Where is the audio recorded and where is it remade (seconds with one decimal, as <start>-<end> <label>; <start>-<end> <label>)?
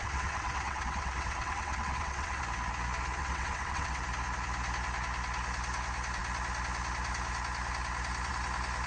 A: 0.0-2.4 remade; 2.4-3.2 recorded; 3.2-4.0 remade; 4.0-8.9 recorded